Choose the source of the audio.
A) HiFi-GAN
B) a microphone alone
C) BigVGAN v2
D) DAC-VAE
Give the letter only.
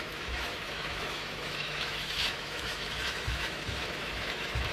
D